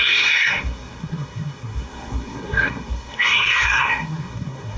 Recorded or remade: remade